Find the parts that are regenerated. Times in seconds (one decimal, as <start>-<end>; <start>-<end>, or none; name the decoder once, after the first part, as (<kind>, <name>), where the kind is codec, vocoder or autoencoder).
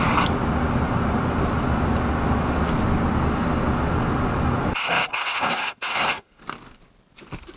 5.1-6.4 (codec, SNAC)